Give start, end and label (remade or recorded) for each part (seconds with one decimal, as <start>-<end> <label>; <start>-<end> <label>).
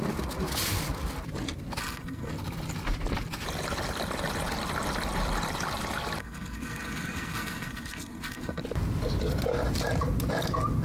0.0-1.8 recorded; 1.8-2.3 remade; 2.3-6.2 recorded; 6.2-8.6 remade; 8.6-10.8 recorded